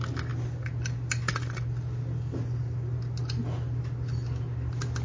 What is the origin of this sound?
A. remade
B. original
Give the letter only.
B